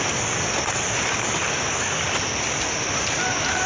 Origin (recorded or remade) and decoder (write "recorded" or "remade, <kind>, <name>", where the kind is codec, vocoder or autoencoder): recorded